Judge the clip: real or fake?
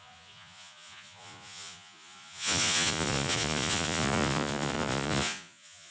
fake